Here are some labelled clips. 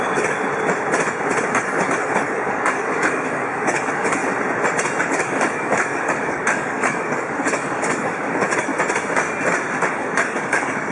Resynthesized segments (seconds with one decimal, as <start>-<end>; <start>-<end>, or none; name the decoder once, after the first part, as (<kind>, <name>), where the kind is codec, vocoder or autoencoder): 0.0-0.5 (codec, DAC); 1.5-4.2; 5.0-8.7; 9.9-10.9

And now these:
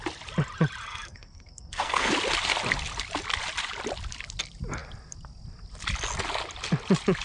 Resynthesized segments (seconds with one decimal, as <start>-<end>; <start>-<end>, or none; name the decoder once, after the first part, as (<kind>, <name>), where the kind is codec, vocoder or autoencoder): 0.8-2.1 (codec, SNAC)

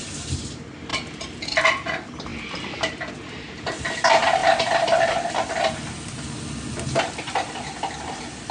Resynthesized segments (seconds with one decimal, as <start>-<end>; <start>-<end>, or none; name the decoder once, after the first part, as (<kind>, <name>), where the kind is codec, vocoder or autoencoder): 0.9-1.6 (vocoder, BigVGAN v2); 2.3-3.1; 4.4-5.3

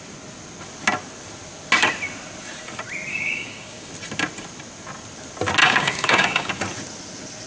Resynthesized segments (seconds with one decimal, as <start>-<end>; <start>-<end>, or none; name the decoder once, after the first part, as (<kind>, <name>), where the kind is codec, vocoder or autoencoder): 3.1-3.9 (codec, DAC); 5.6-6.5

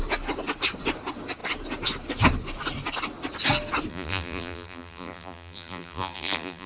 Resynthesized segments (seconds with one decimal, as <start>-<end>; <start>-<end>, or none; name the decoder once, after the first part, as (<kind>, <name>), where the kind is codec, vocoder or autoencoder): 3.9-6.7 (vocoder, BigVGAN v2)

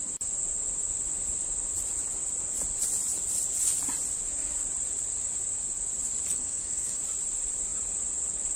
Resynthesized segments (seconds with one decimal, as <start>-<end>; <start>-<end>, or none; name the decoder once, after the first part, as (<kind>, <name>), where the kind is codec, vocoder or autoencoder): 6.3-7.0 (codec, SNAC)

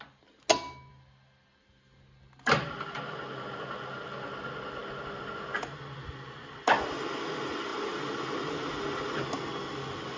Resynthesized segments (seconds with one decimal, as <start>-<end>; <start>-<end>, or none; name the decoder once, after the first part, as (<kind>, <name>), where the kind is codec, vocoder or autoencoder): none

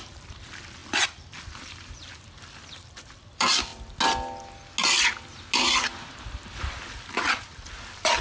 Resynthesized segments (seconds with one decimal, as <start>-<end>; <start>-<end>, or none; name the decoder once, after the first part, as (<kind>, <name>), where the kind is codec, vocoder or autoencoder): 0.0-0.8 (vocoder, BigVGAN v2); 1.5-3.7; 6.1-8.2